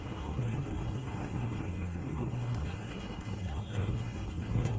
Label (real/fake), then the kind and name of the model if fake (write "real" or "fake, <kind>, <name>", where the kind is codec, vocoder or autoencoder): fake, codec, SNAC